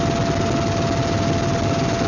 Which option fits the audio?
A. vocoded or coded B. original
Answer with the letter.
B